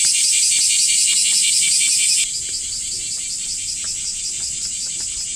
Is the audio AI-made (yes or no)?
no